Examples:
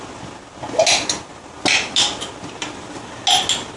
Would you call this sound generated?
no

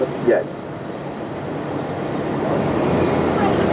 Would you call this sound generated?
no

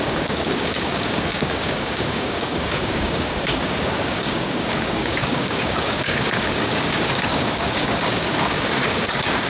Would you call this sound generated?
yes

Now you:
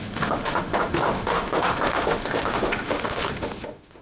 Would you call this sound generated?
yes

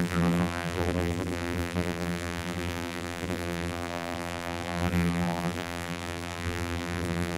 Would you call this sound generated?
yes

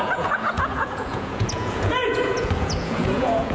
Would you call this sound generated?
yes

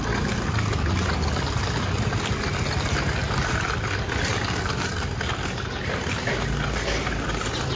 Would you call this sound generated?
no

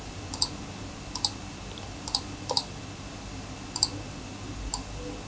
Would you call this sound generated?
no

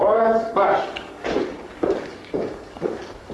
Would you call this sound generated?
yes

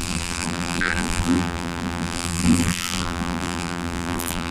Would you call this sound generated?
yes